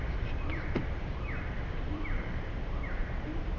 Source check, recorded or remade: remade